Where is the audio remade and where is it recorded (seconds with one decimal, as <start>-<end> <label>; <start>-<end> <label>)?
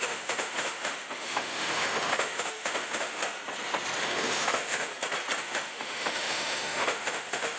0.0-3.2 remade; 3.2-4.0 recorded; 4.0-4.9 remade; 4.9-5.4 recorded; 5.4-7.6 remade